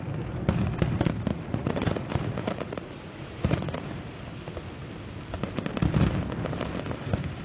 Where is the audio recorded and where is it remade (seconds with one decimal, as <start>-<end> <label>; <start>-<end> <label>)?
0.0-1.3 recorded; 1.3-4.2 remade; 4.2-7.4 recorded